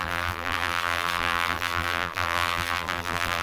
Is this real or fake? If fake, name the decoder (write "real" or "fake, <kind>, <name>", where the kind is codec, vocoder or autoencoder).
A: fake, vocoder, BigVGAN v2